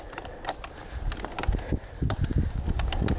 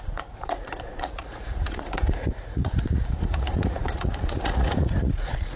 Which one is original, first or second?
first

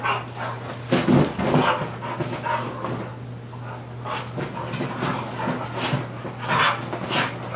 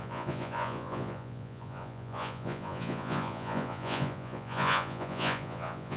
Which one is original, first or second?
first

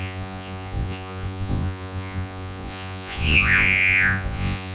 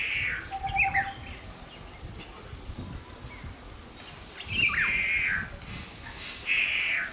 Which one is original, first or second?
second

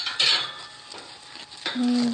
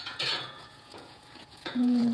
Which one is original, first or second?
first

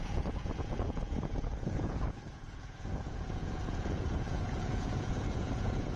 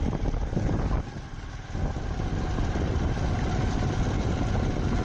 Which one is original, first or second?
second